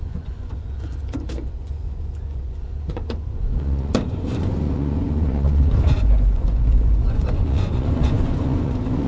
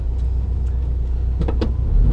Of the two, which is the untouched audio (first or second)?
second